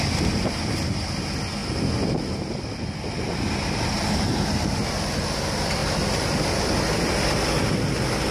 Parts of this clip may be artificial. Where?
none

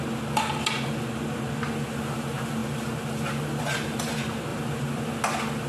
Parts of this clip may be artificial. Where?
4.5-5.2 (vocoder, BigVGAN v2)

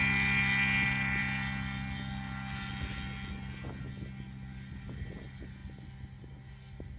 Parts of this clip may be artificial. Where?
none

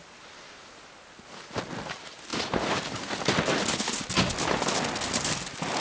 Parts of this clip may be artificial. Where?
none

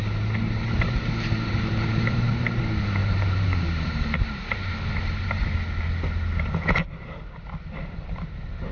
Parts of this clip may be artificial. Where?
0.4-2.6 (vocoder, BigVGAN v2); 3.0-5.4

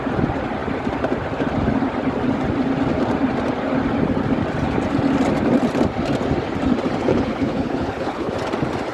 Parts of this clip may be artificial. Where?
7.1-8.3 (codec, HILCodec)

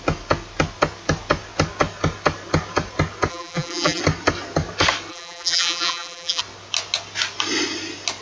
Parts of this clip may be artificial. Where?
3.3-4.0 (vocoder, BigVGAN v2); 5.1-6.4

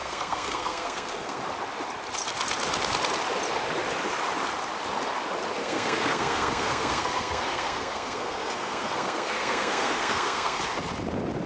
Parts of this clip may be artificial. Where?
0.0-1.4 (codec, SNAC); 5.6-10.6